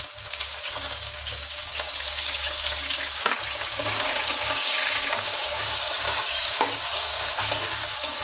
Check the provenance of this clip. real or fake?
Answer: fake